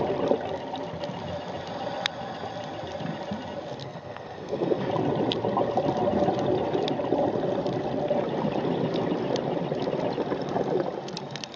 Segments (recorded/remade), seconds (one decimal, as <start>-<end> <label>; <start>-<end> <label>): 0.0-3.8 recorded; 3.8-4.8 remade; 4.8-11.6 recorded